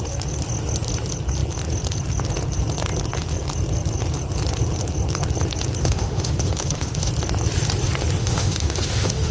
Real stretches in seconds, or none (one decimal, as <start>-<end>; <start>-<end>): 0.0-5.8; 7.1-8.2